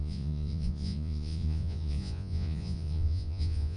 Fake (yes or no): yes